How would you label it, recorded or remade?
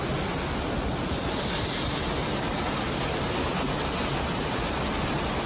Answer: recorded